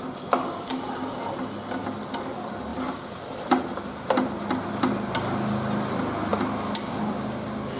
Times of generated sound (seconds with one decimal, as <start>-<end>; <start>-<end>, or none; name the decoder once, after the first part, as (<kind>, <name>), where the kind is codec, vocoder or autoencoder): none